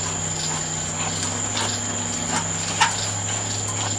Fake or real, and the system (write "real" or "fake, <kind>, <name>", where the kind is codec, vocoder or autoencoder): real